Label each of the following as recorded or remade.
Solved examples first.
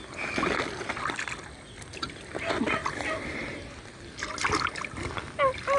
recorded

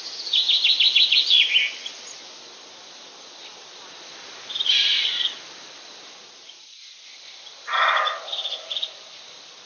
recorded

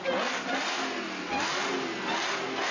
recorded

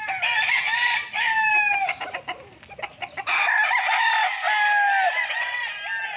recorded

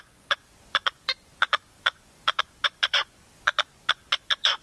remade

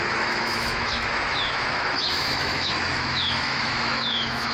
remade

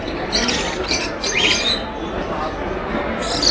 recorded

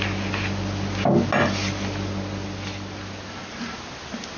recorded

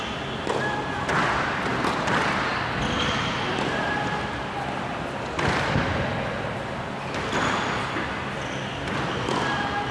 recorded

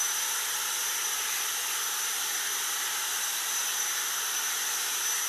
recorded